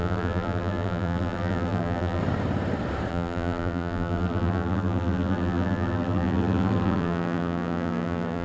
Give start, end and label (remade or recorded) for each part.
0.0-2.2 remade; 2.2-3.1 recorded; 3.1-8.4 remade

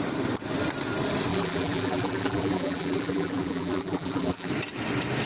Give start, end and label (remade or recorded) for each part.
0.0-1.3 recorded; 1.3-4.5 remade; 4.5-5.3 recorded

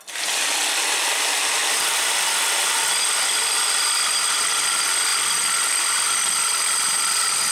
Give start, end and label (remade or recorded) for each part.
0.0-7.5 recorded

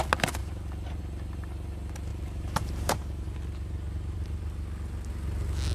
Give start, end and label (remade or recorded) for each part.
0.0-0.4 recorded; 0.4-1.0 remade; 1.0-2.1 recorded; 2.1-3.0 remade; 3.0-5.7 recorded

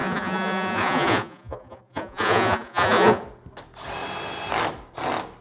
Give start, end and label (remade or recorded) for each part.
0.0-3.2 remade; 3.2-5.4 recorded